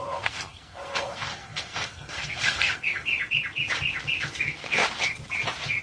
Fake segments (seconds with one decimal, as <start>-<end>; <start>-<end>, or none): 0.0-3.1; 4.2-4.8